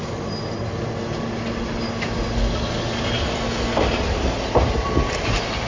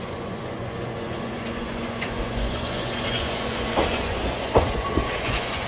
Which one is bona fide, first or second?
first